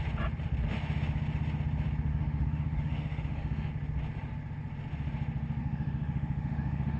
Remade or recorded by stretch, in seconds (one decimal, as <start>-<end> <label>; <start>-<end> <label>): 0.0-2.1 recorded; 2.1-3.7 remade; 3.7-5.6 recorded; 5.6-7.0 remade